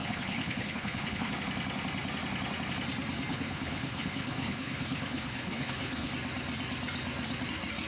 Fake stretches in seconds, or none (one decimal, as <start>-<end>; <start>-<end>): 0.0-1.3; 3.3-6.1